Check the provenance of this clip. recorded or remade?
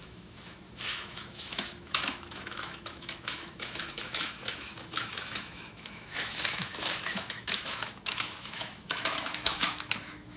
remade